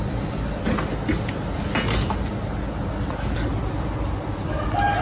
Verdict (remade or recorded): recorded